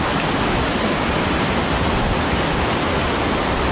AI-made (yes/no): no